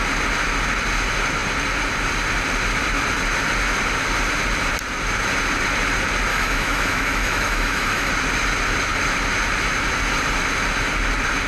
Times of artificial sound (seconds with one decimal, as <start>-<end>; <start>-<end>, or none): 6.3-8.1